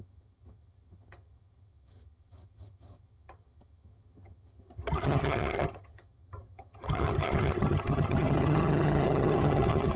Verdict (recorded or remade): remade